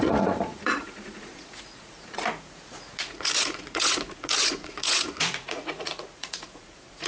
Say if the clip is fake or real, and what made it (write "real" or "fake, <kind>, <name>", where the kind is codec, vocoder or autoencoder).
fake, vocoder, Vocos